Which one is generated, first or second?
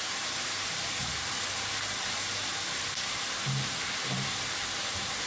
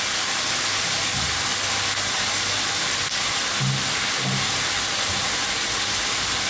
first